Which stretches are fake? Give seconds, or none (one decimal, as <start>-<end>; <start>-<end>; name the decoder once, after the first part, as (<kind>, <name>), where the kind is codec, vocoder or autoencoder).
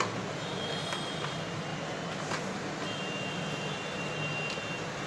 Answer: none